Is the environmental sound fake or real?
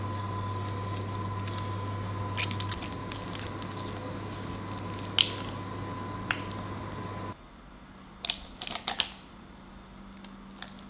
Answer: real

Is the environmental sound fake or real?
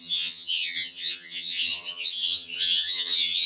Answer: fake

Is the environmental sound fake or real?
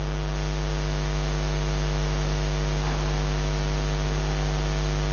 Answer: real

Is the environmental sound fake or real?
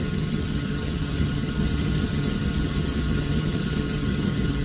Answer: fake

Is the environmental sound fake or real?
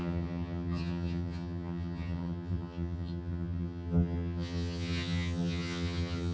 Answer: fake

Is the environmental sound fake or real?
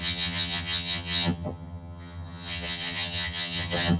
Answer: fake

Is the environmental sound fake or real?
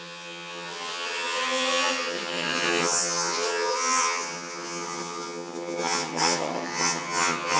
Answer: fake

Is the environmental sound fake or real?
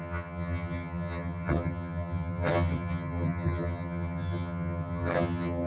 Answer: fake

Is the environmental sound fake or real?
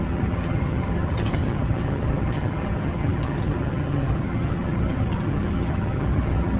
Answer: fake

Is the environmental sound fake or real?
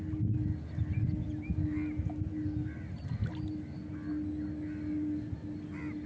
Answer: real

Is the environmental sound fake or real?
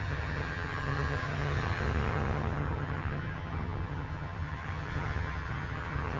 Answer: fake